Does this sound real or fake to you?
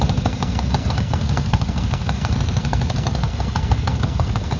fake